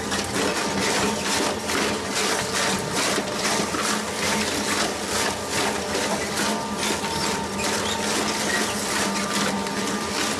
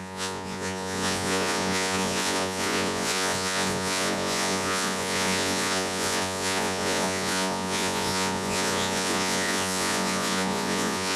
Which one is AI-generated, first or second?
second